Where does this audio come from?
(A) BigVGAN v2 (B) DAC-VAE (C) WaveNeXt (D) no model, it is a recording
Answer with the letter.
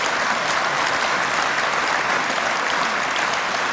D